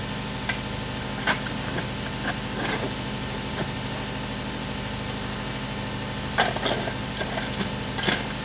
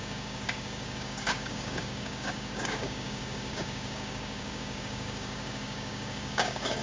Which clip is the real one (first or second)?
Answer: first